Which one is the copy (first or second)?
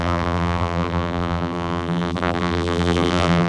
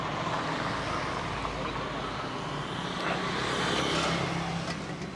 first